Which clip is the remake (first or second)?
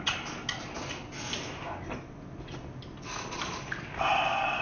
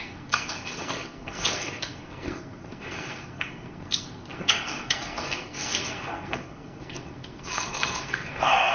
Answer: second